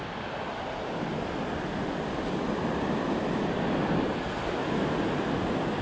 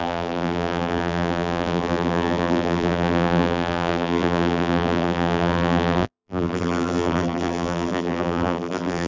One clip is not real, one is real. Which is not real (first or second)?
second